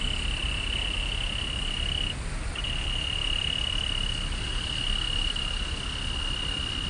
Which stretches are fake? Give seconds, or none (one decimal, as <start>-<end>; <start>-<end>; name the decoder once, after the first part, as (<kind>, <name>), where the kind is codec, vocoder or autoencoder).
none